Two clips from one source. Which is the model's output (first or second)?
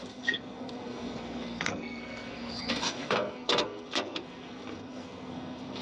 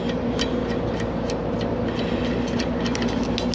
first